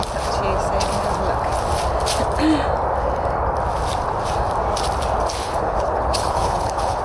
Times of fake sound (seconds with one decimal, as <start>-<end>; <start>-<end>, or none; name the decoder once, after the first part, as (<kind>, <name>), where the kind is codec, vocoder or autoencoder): 5.4-7.0 (codec, HILCodec)